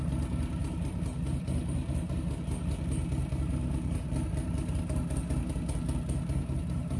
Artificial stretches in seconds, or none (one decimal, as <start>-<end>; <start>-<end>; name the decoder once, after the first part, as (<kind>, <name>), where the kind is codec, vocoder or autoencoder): none